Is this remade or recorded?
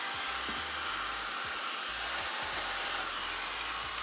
recorded